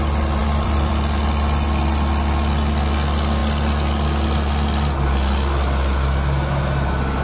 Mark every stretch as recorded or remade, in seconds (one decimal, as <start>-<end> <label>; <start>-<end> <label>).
0.0-0.4 recorded; 0.4-0.9 remade; 0.9-7.2 recorded